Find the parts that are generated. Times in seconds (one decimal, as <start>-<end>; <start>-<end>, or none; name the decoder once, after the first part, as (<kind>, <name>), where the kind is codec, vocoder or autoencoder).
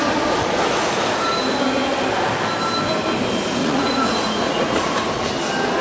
3.6-5.3 (vocoder, Vocos)